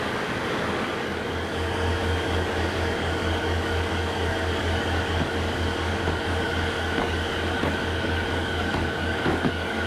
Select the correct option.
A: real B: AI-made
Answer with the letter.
B